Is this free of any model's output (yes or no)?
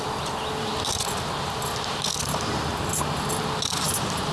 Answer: yes